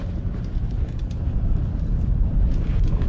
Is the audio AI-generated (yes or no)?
no